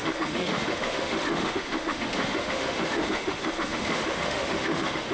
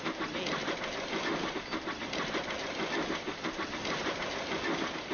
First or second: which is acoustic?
second